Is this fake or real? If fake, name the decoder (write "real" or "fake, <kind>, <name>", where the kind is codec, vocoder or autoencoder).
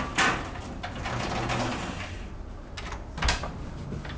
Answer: real